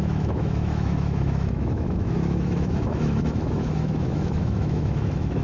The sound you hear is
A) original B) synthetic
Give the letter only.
B